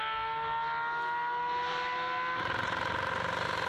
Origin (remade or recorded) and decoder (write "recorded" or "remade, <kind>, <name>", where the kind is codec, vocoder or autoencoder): recorded